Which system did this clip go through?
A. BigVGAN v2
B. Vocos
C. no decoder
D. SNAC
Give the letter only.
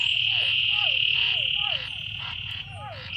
B